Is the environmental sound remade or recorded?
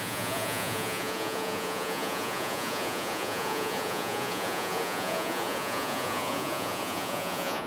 remade